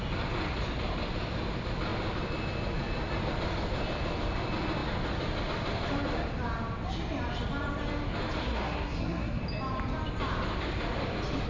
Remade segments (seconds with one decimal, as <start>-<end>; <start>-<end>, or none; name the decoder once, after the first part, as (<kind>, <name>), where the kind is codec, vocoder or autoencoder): 8.4-9.4 (codec, SNAC)